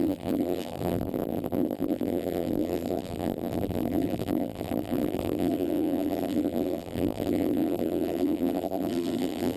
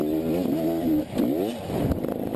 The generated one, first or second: first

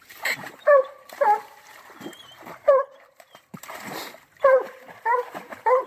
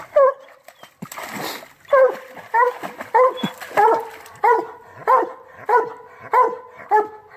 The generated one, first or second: first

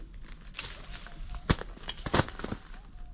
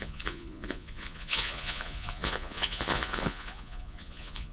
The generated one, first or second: second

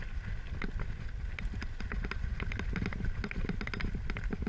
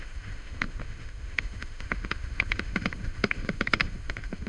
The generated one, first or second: second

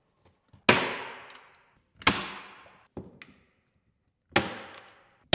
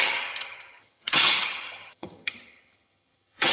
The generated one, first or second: second